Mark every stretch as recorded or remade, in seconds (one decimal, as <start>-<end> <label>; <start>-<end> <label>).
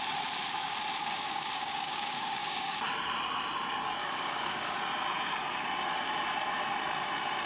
0.0-1.0 recorded; 1.0-2.8 remade; 2.8-4.0 recorded; 4.0-4.8 remade; 4.8-7.5 recorded